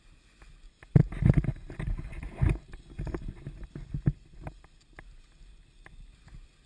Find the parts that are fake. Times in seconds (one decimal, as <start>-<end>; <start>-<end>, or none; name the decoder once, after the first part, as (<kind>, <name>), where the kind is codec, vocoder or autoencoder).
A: none